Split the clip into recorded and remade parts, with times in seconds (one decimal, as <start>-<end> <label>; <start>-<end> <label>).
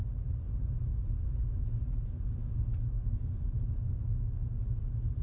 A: 0.0-5.2 recorded